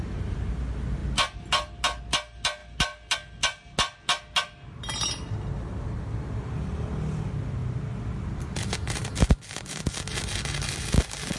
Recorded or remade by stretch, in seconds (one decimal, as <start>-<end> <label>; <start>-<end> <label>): 0.0-11.4 recorded